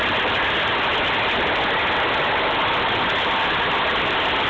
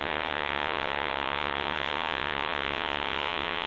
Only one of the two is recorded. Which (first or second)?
first